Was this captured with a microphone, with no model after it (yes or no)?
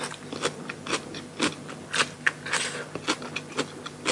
yes